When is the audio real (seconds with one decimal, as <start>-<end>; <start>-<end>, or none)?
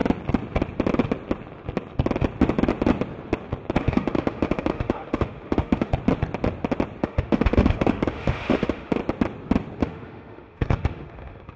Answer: 0.0-3.8; 5.9-7.0; 9.0-9.8